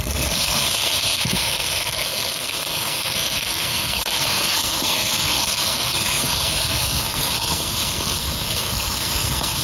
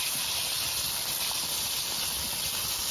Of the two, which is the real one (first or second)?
second